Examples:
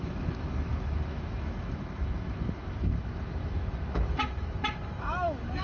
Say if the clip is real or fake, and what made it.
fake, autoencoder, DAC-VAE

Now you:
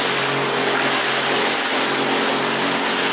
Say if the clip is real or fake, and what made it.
real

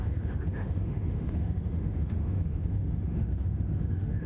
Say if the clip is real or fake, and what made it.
fake, autoencoder, DAC-VAE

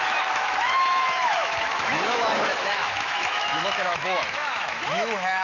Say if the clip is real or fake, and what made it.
fake, autoencoder, DAC-VAE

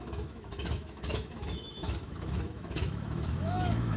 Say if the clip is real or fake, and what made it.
fake, autoencoder, DAC-VAE